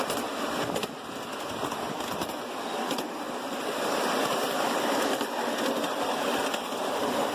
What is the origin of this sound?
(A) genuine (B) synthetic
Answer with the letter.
A